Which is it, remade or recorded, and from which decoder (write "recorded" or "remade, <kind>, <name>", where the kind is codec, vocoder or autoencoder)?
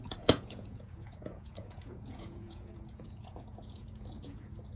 remade, vocoder, Vocos